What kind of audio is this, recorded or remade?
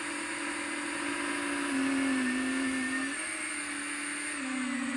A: recorded